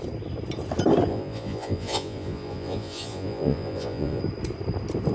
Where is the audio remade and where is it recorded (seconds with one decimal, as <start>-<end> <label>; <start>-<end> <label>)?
0.0-1.1 recorded; 1.1-4.2 remade; 4.2-5.1 recorded